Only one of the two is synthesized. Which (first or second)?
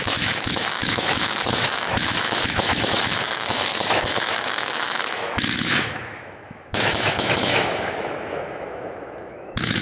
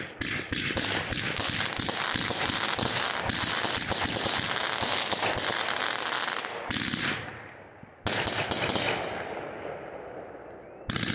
first